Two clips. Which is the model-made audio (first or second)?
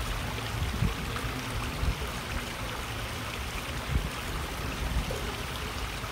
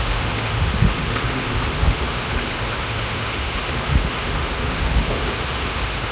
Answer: second